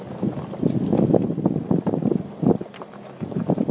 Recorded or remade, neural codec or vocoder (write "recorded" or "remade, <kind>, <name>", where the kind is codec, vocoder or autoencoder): recorded